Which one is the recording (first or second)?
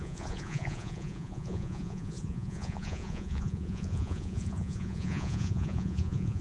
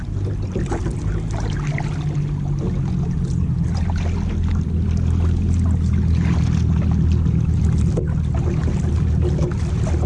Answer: second